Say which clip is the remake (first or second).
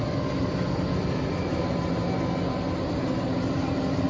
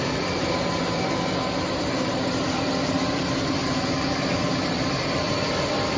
second